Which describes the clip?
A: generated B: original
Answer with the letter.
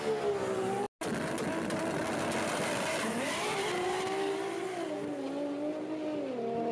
B